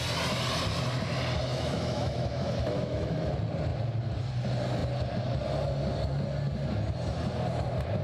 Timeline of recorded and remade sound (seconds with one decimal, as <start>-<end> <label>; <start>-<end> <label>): 0.0-1.5 recorded; 1.5-3.3 remade; 3.3-8.0 recorded